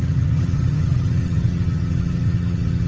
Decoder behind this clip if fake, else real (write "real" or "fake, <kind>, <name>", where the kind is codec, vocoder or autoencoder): fake, vocoder, HiFi-GAN